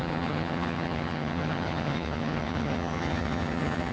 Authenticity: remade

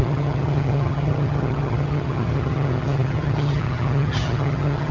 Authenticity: remade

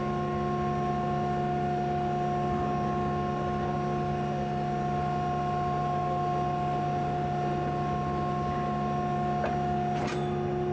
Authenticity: recorded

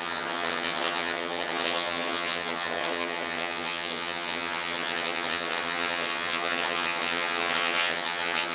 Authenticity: remade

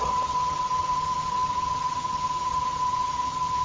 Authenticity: remade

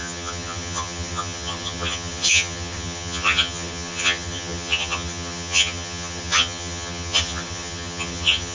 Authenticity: remade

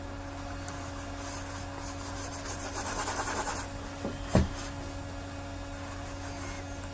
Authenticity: recorded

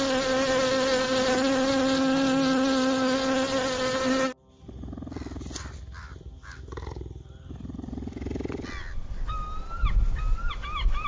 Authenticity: recorded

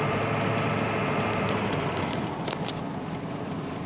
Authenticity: recorded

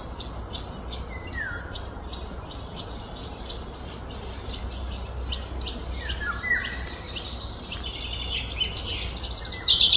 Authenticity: recorded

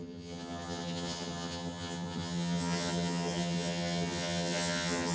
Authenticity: remade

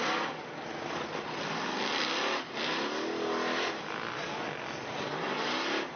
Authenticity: recorded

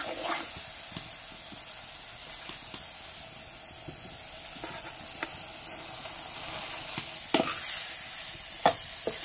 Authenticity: recorded